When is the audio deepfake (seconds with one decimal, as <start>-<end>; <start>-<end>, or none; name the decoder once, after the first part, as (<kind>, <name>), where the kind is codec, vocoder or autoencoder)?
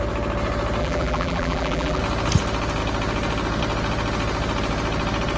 0.8-2.0 (vocoder, BigVGAN v2)